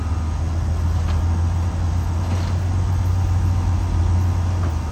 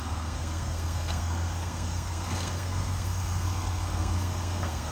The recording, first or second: first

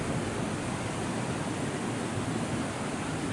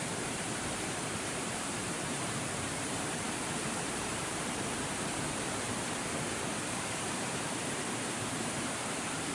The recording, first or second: first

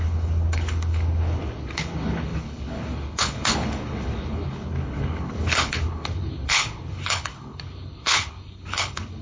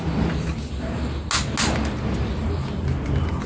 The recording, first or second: second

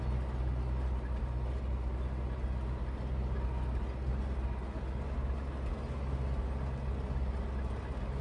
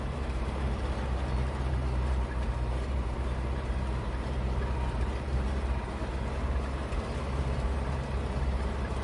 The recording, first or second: first